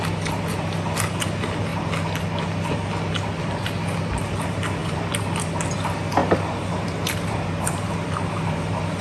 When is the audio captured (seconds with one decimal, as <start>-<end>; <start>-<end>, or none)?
0.0-4.8; 5.5-6.2